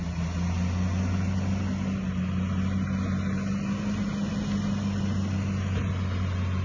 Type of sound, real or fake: real